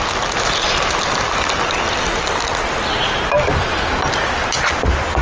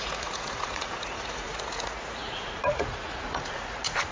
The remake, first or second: second